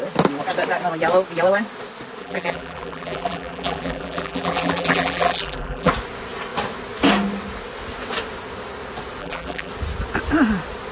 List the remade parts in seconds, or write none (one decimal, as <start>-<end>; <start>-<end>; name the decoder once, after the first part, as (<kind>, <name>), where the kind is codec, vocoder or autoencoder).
2.2-5.9 (vocoder, BigVGAN v2); 9.2-9.7